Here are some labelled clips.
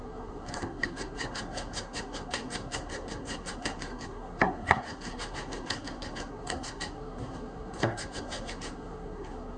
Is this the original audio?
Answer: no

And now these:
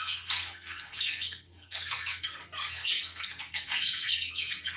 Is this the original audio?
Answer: no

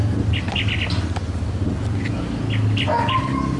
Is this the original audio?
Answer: yes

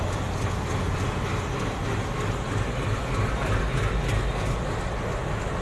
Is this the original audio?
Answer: yes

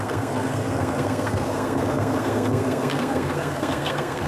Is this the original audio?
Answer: no